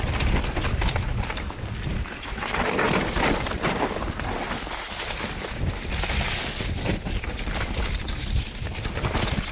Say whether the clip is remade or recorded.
recorded